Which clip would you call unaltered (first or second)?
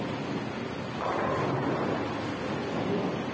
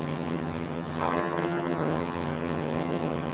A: first